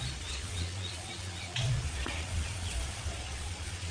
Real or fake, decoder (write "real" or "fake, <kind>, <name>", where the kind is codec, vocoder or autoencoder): fake, vocoder, Vocos